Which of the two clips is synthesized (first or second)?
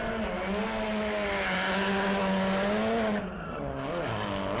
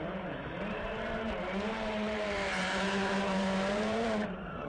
second